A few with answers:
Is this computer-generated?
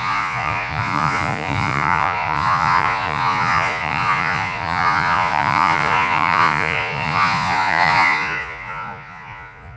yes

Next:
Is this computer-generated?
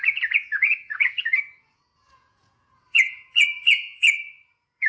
yes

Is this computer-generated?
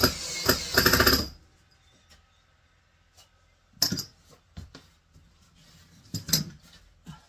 no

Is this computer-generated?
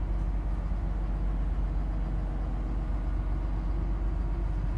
no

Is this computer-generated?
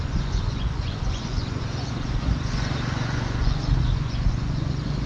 yes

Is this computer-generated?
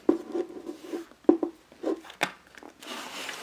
no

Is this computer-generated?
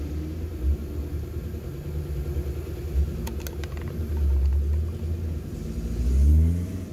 no